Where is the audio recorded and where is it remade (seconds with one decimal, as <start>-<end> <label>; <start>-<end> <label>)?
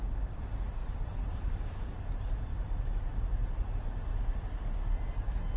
0.0-5.6 recorded